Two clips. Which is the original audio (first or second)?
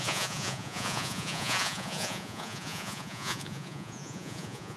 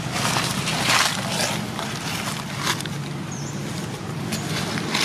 second